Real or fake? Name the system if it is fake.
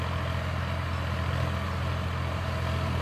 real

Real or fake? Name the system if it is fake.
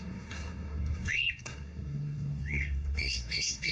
fake, codec, SNAC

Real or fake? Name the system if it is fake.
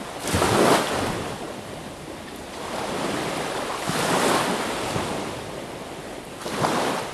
real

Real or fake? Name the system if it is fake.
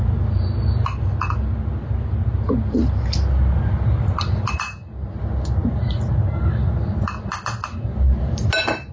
real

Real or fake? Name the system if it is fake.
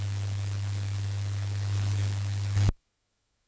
fake, autoencoder, DAC-VAE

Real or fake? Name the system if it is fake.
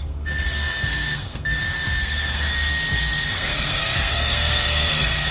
fake, codec, SNAC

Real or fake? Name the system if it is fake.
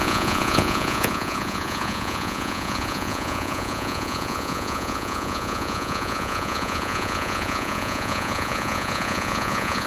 fake, vocoder, Vocos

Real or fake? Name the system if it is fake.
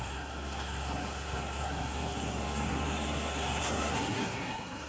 fake, codec, SNAC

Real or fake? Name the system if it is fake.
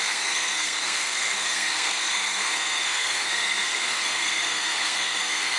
fake, codec, SNAC